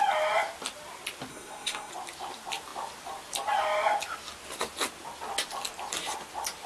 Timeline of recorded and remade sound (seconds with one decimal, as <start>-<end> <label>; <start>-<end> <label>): 0.0-1.3 recorded; 1.3-1.9 remade; 1.9-6.7 recorded